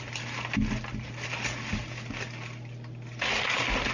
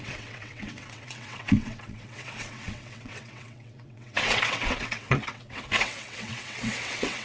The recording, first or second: first